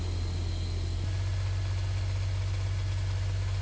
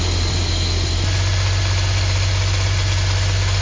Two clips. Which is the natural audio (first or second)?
first